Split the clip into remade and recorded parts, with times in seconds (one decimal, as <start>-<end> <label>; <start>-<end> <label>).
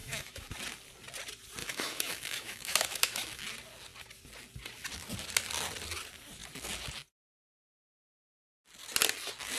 0.0-0.5 remade; 0.5-1.6 recorded; 1.6-3.4 remade; 3.4-9.6 recorded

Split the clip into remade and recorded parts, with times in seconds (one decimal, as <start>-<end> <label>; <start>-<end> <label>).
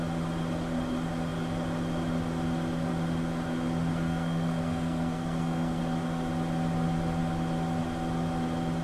0.0-3.9 recorded; 3.9-5.8 remade; 5.8-8.8 recorded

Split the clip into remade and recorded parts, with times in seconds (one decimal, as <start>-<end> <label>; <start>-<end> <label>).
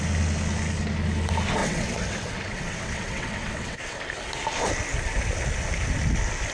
0.0-1.6 recorded; 1.6-4.0 remade; 4.0-6.5 recorded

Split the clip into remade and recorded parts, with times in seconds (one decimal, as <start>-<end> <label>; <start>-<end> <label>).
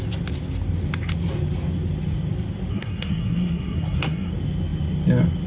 0.0-2.7 recorded; 2.7-4.3 remade; 4.3-5.5 recorded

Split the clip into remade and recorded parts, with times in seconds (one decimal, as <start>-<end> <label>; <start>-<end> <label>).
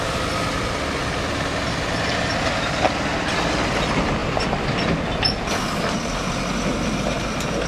0.0-7.7 recorded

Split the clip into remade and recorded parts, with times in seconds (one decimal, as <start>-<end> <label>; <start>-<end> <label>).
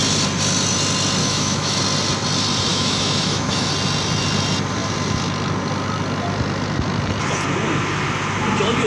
0.0-1.2 recorded; 1.2-1.8 remade; 1.8-2.7 recorded; 2.7-3.7 remade; 3.7-8.9 recorded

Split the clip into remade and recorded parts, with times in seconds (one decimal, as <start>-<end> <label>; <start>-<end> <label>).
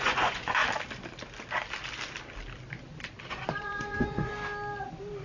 0.0-0.6 remade; 0.6-3.3 recorded; 3.3-4.3 remade; 4.3-5.2 recorded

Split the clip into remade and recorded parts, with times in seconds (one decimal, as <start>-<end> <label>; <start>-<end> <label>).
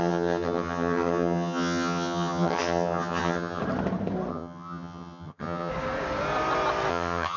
0.0-3.6 remade; 3.6-4.3 recorded; 4.3-5.7 remade; 5.7-6.9 recorded; 6.9-7.4 remade